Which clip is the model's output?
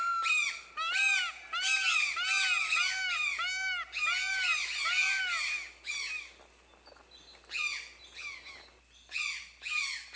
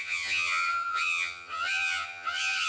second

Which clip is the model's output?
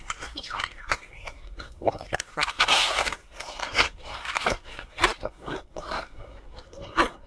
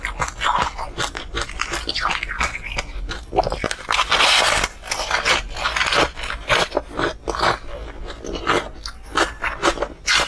first